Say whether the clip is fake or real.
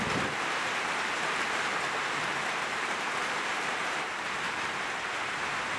fake